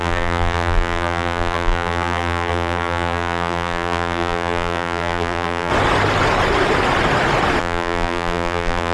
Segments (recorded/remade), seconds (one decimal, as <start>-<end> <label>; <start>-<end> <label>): 0.0-5.7 remade; 5.7-7.6 recorded; 7.6-8.9 remade

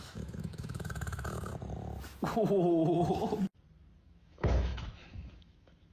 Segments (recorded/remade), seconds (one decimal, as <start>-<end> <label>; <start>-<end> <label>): 0.0-1.5 remade; 1.5-4.0 recorded; 4.0-5.9 remade

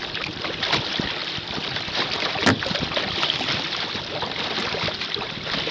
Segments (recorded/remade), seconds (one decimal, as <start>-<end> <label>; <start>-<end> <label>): 0.0-1.2 recorded; 1.2-3.9 remade; 3.9-5.7 recorded

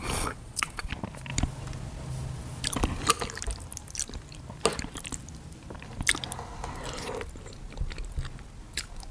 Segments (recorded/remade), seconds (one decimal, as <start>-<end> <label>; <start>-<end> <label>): 0.0-0.9 remade; 0.9-9.1 recorded

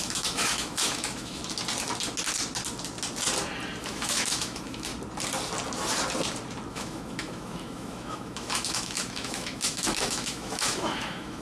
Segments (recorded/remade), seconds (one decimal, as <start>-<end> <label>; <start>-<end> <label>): 0.0-1.4 remade; 1.4-3.8 recorded; 3.8-4.9 remade; 4.9-6.7 recorded; 6.7-11.4 remade